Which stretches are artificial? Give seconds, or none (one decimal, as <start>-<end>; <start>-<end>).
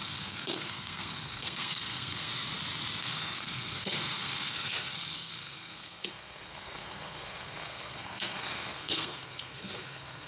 0.0-2.3; 3.0-10.3